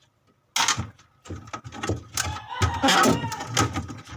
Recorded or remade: recorded